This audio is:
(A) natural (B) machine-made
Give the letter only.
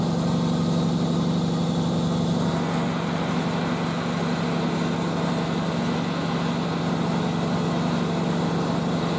A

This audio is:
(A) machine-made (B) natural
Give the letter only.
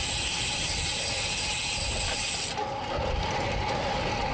B